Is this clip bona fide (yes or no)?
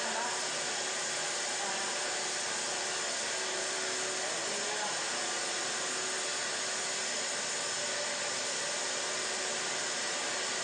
yes